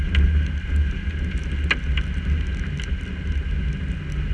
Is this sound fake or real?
real